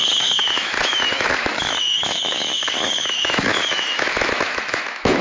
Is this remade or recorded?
remade